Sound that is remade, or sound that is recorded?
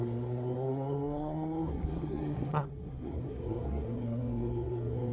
remade